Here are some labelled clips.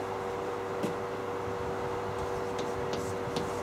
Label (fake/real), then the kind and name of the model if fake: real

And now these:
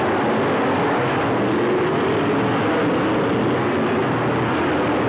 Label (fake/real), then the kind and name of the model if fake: real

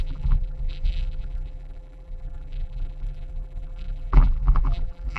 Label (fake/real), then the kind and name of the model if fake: fake, vocoder, BigVGAN v2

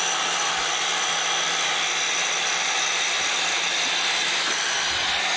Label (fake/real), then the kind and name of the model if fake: fake, vocoder, BigVGAN v2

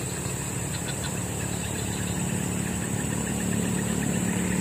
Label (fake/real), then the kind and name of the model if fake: real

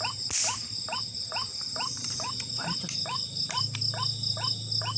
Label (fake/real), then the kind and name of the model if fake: real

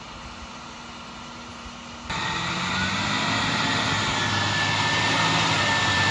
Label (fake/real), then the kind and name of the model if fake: real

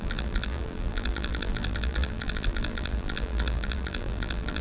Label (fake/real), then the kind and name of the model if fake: fake, vocoder, BigVGAN v2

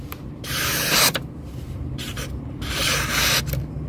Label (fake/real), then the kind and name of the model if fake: fake, vocoder, BigVGAN v2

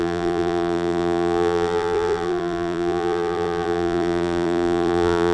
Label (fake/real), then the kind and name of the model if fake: fake, vocoder, BigVGAN v2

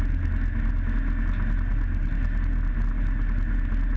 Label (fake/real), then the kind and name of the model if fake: real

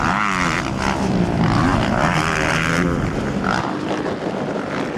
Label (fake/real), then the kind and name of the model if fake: real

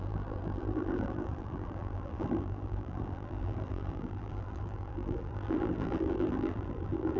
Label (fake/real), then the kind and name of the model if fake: fake, vocoder, BigVGAN v2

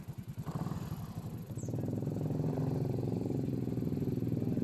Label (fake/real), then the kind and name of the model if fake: real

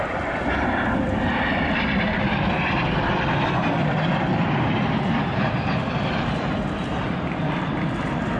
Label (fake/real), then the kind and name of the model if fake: fake, vocoder, BigVGAN v2